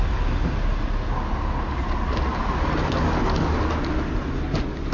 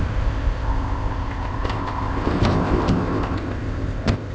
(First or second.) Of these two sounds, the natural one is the first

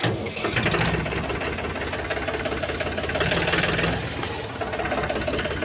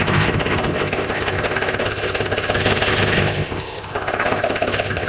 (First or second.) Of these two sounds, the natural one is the first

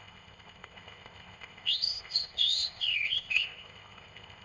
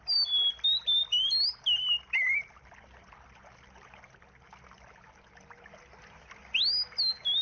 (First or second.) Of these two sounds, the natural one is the second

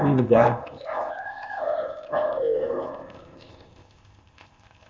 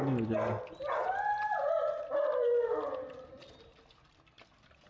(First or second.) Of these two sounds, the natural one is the second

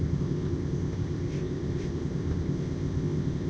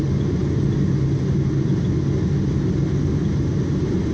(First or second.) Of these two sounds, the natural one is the second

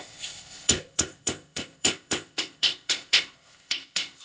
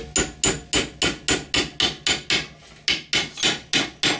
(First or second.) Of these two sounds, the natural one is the second